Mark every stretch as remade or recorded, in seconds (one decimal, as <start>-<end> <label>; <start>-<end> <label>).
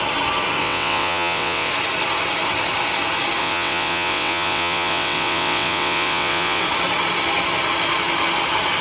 0.0-0.6 recorded; 0.6-1.7 remade; 1.7-3.4 recorded; 3.4-6.6 remade; 6.6-8.8 recorded